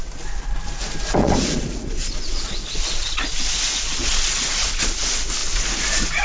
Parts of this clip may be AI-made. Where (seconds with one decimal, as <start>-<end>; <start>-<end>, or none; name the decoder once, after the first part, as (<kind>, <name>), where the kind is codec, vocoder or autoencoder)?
1.2-3.2 (vocoder, Vocos); 4.0-5.0